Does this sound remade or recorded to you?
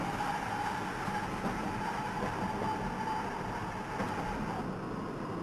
recorded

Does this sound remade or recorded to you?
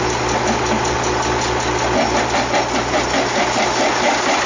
recorded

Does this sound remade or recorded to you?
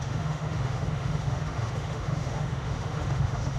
remade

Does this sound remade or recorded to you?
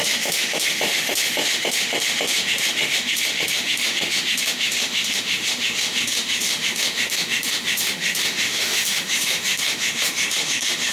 remade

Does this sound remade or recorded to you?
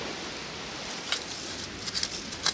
recorded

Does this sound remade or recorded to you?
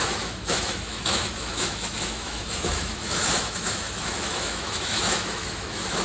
remade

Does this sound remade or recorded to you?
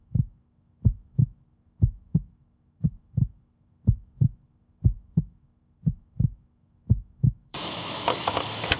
remade